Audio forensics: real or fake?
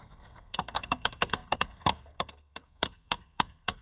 fake